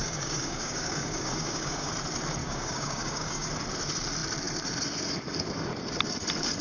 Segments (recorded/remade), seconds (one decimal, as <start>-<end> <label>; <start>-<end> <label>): 0.0-1.9 remade; 1.9-2.4 recorded; 2.4-3.5 remade; 3.5-6.6 recorded